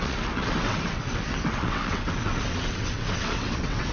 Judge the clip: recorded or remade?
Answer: remade